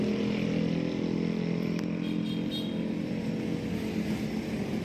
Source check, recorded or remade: recorded